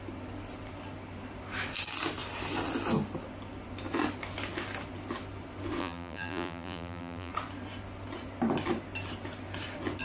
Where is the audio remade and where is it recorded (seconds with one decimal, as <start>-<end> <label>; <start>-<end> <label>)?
0.0-5.8 recorded; 5.8-7.3 remade; 7.3-10.0 recorded